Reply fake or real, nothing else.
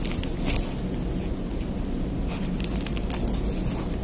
real